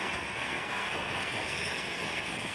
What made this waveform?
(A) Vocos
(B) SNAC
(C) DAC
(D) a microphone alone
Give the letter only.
B